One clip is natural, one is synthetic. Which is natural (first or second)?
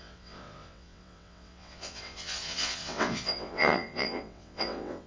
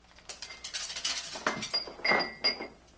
second